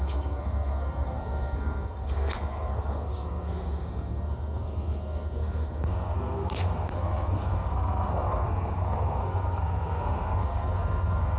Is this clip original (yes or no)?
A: no